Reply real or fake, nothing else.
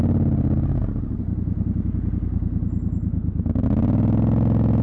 real